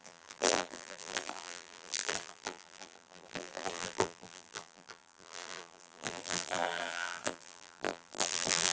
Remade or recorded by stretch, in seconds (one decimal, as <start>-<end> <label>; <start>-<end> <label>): 0.0-8.7 remade